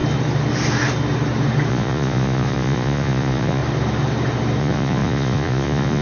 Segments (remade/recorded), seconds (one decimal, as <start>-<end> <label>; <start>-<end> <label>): 0.0-1.7 recorded; 1.7-3.6 remade; 3.6-4.6 recorded; 4.6-6.0 remade